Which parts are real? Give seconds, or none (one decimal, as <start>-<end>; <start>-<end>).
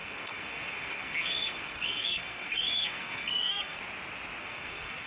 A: 3.8-4.4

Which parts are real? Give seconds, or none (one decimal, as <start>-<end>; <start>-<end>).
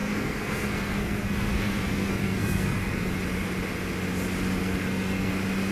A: 3.1-4.6; 5.3-5.7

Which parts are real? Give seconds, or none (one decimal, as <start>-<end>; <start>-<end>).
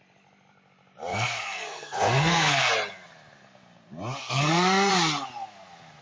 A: 0.0-1.1; 2.7-4.2; 4.9-6.0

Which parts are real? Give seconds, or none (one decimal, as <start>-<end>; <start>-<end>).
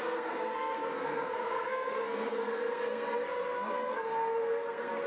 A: none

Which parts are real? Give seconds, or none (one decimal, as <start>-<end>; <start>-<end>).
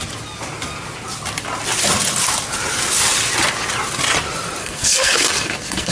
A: 0.0-4.6